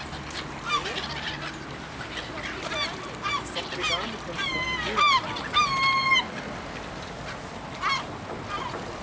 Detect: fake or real real